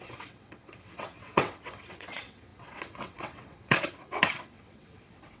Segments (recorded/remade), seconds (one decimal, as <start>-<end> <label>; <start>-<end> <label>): 0.0-5.4 remade